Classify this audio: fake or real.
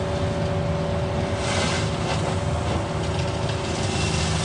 real